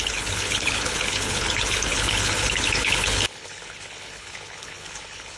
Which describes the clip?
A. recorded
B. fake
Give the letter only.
B